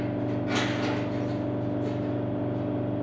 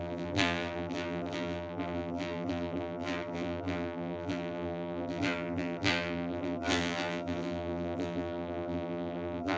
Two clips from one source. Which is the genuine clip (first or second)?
first